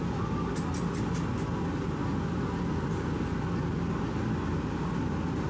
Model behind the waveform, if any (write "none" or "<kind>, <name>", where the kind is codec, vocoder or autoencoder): none